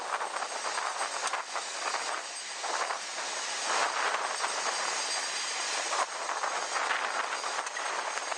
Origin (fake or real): real